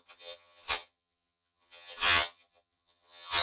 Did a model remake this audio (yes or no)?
yes